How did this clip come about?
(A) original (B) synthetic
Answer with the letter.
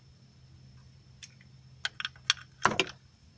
A